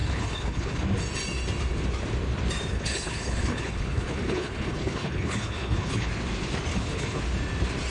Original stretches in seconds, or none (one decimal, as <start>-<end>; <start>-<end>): 0.8-2.7; 6.1-6.7; 7.2-7.9